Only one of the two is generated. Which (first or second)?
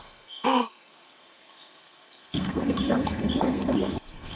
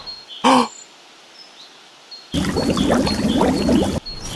first